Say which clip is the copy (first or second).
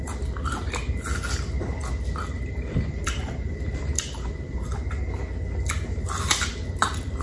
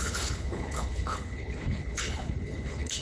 second